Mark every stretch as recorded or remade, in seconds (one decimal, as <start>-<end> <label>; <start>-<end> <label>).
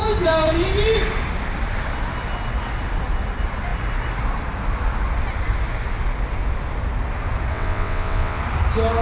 0.0-7.5 recorded; 7.5-8.4 remade; 8.4-9.0 recorded